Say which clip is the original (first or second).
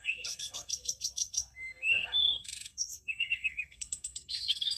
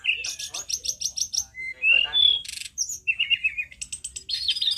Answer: second